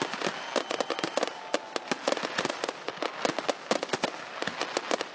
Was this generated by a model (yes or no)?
no